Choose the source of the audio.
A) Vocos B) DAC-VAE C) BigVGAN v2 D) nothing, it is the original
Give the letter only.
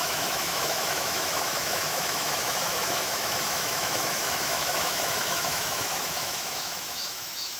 B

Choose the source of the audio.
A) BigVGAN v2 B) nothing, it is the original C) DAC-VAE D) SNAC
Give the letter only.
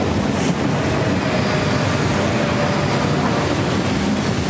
B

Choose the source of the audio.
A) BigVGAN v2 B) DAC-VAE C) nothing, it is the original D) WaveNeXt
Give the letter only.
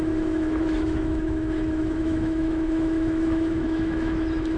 B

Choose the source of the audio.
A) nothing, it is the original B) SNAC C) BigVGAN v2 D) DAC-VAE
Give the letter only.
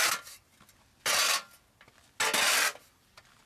A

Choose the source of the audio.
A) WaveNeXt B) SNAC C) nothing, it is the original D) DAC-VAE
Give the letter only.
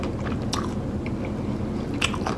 C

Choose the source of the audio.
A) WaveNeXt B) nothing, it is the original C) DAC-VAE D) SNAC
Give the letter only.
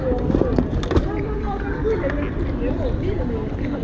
B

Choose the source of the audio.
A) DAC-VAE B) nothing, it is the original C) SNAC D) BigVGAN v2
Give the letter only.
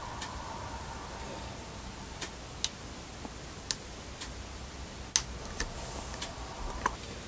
B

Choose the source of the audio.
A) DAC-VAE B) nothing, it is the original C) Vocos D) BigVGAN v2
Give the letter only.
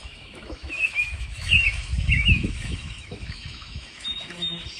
A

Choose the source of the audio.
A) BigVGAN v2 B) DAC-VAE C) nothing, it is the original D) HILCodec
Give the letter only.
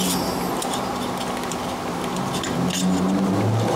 C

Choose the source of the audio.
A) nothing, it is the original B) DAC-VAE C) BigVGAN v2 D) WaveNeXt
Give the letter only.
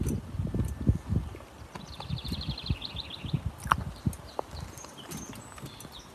A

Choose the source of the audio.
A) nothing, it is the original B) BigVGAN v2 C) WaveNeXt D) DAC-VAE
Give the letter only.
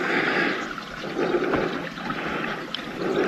A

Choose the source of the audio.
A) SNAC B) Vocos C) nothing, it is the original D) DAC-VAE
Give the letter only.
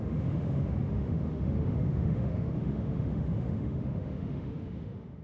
D